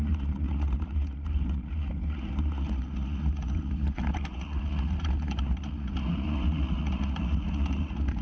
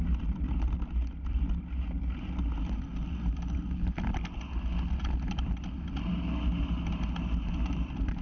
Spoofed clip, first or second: first